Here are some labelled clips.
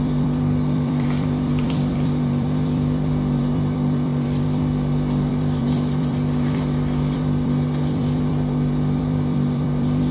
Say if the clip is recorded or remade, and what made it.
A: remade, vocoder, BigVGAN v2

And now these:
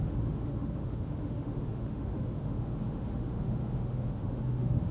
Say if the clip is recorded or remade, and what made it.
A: remade, autoencoder, DAC-VAE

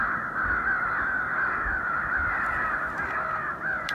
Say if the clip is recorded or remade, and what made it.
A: recorded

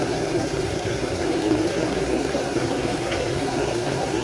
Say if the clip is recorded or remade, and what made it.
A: remade, codec, SNAC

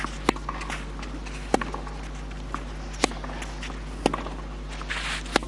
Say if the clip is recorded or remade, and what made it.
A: recorded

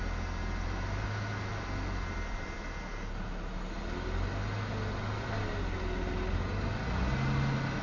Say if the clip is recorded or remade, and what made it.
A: recorded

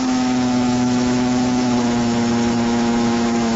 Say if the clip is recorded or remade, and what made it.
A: remade, autoencoder, DAC-VAE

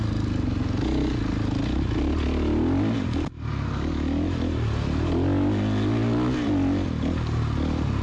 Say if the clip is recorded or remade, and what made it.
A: recorded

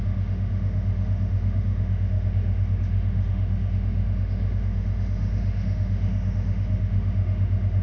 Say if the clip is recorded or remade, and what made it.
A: remade, autoencoder, DAC-VAE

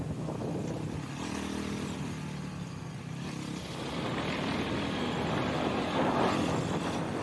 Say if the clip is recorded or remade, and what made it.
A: recorded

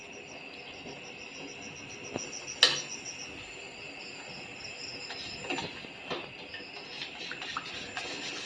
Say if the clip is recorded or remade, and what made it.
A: recorded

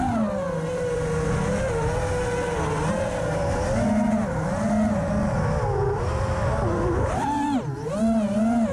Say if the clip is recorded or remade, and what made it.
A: recorded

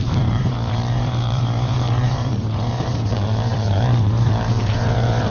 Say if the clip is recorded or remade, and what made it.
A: remade, vocoder, BigVGAN v2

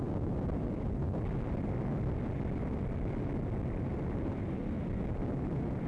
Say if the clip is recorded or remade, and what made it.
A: recorded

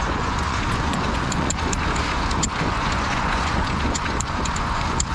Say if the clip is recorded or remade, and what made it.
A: remade, vocoder, Vocos